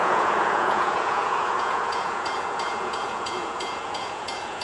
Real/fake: fake